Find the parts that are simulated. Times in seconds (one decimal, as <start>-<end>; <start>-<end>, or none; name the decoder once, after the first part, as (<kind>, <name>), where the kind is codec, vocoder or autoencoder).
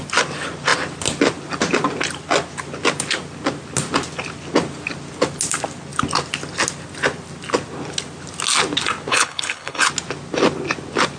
9.1-9.9 (codec, HILCodec)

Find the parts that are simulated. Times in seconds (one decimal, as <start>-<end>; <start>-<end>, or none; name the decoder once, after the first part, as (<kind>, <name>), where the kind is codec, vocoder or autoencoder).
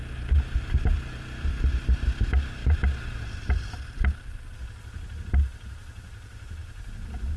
none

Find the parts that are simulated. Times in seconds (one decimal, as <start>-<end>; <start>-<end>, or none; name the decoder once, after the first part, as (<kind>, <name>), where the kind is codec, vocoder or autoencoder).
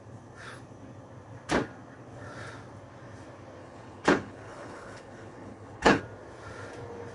3.6-6.0 (codec, HILCodec)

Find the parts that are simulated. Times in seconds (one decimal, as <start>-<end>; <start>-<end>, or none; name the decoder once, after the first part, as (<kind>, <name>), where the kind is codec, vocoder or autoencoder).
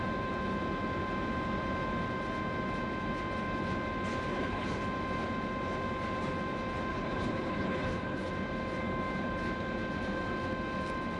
4.3-4.8 (codec, HILCodec); 6.9-8.3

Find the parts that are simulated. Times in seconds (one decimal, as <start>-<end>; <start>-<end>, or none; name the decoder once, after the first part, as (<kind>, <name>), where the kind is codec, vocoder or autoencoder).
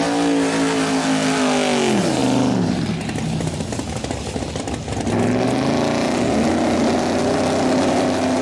none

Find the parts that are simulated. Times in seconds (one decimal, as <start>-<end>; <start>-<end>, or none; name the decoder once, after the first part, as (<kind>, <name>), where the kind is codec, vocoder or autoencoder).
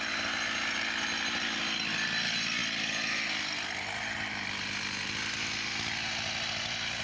none